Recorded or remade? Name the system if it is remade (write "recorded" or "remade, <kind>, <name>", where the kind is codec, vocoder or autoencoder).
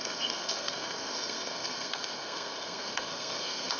remade, codec, SNAC